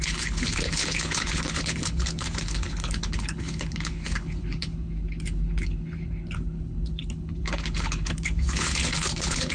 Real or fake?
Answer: fake